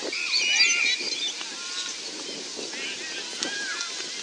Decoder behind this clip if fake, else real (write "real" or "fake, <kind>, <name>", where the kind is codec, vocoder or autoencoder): real